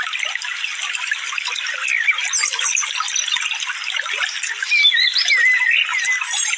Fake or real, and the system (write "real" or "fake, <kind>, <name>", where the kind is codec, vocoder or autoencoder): real